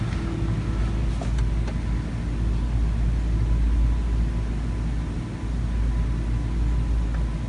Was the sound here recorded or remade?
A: recorded